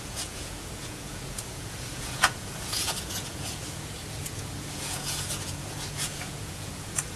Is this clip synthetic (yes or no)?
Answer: yes